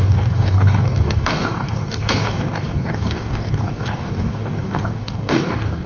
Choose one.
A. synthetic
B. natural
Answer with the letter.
A